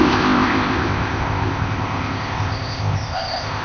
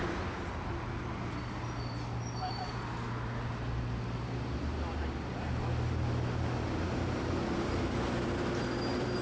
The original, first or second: second